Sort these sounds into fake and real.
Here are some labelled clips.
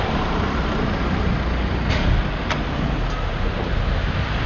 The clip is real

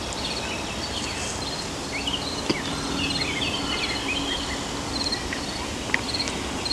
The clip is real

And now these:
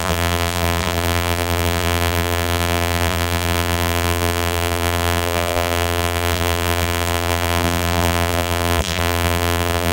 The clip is fake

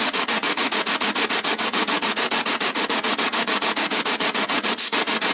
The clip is fake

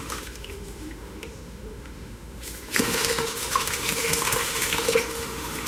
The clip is fake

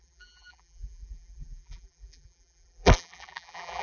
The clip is fake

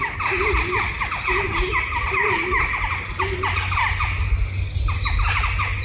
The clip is real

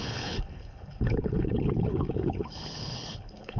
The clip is fake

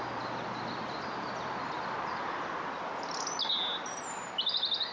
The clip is real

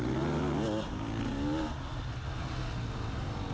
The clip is real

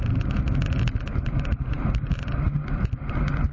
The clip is real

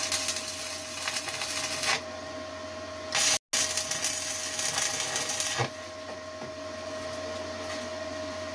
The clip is real